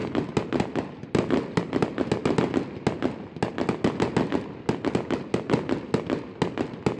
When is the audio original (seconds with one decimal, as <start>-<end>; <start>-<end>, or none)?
0.0-7.0